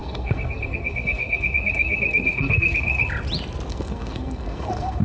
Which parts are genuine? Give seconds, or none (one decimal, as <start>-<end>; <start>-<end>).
3.0-3.7